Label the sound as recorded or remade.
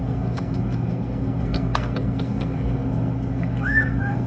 remade